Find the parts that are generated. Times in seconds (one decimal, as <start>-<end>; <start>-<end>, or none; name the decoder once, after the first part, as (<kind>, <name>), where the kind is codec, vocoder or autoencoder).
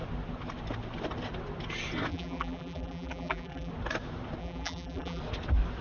2.1-3.7 (vocoder, BigVGAN v2); 4.4-5.2